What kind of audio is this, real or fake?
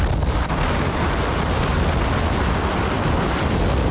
real